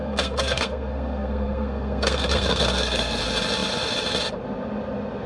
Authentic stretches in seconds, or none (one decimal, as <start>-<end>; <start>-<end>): 3.2-5.3